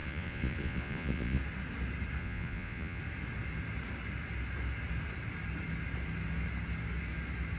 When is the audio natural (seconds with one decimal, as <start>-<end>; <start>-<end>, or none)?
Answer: 1.4-2.2; 3.0-7.6